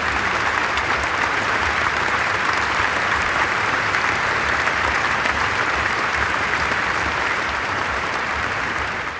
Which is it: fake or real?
fake